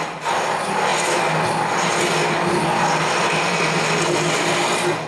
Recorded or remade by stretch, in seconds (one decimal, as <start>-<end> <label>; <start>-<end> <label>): 0.0-5.1 recorded